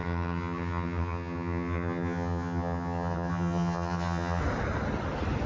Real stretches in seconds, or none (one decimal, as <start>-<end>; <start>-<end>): 4.4-5.5